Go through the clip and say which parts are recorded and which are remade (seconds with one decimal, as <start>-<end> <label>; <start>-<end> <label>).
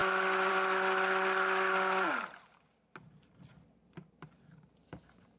0.0-5.4 recorded